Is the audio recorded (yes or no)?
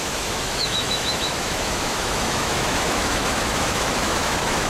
no